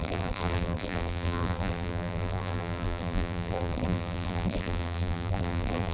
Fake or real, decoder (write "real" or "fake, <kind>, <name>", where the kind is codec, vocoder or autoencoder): fake, vocoder, BigVGAN v2